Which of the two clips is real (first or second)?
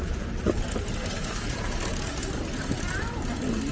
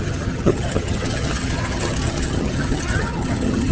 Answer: first